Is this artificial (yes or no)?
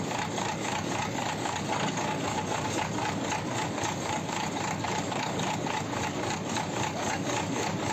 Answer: yes